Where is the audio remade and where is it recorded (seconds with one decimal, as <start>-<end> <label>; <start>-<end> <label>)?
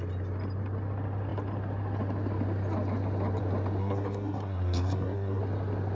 0.0-3.8 recorded; 3.8-5.4 remade; 5.4-5.9 recorded